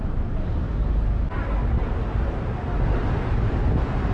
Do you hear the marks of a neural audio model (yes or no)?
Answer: no